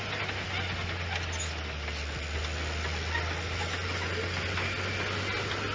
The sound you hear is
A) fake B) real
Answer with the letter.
B